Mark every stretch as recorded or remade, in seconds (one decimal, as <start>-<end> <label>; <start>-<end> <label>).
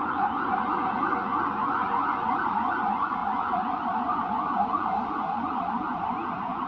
0.0-6.7 remade